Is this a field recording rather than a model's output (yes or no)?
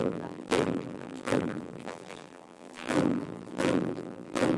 no